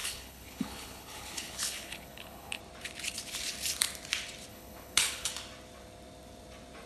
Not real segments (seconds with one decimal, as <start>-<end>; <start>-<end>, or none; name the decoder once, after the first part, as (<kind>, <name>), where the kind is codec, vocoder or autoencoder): 0.0-2.6 (codec, HILCodec); 4.5-5.3